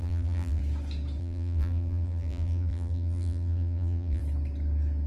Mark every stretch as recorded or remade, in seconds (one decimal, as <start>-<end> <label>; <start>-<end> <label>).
0.0-0.6 remade; 0.6-1.2 recorded; 1.2-4.2 remade; 4.2-5.1 recorded